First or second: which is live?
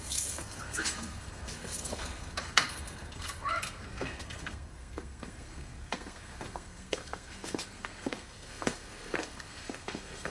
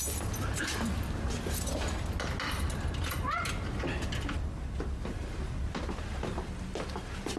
second